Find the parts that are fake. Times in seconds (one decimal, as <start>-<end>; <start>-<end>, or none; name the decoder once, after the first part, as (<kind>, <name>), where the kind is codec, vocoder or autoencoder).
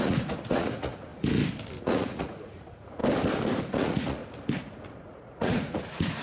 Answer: 0.0-1.1 (vocoder, Vocos); 1.8-3.0; 3.6-4.2; 5.0-6.2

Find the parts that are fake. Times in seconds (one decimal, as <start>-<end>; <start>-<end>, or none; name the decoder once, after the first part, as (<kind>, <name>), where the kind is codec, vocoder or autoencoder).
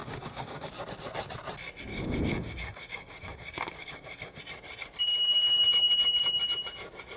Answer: 0.0-0.7 (codec, DAC); 1.9-4.4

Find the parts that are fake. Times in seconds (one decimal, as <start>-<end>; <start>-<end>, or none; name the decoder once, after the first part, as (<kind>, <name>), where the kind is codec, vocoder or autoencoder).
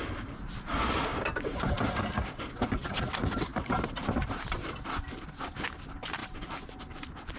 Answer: 3.5-4.8 (vocoder, BigVGAN v2); 6.2-6.8